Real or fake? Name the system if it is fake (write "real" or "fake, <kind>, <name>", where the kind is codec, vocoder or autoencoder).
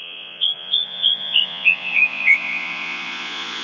fake, vocoder, Vocos